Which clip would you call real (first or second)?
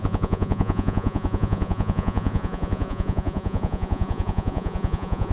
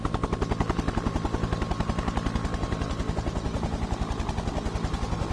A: second